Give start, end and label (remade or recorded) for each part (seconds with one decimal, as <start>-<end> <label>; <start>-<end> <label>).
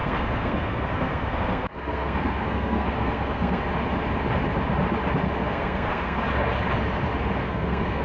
0.0-3.6 remade; 3.6-5.4 recorded; 5.4-6.2 remade; 6.2-7.4 recorded; 7.4-8.0 remade